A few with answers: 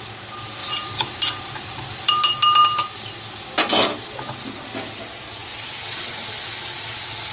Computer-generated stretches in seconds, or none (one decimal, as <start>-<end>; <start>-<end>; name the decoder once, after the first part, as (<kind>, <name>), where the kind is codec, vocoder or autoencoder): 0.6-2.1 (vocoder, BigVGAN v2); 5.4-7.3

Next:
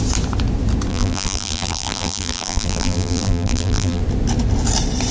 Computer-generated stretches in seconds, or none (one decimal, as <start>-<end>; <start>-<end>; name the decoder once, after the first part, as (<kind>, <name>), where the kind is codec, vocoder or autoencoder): 0.9-4.0 (vocoder, BigVGAN v2)

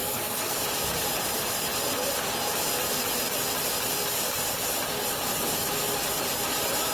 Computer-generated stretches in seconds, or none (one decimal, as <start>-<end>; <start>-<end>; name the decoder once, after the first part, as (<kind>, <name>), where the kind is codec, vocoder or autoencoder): 0.0-0.6 (codec, SNAC)

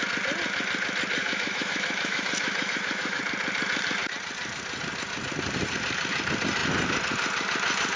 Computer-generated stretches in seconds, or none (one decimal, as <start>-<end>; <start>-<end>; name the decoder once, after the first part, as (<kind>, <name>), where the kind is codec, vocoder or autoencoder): 1.2-3.2 (autoencoder, DAC-VAE)

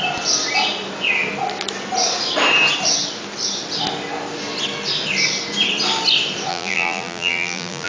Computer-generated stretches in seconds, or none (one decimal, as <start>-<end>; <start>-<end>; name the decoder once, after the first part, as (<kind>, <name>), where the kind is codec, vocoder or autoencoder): 6.5-7.9 (vocoder, BigVGAN v2)